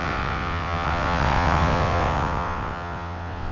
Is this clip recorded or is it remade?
remade